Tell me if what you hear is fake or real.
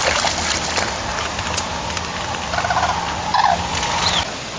real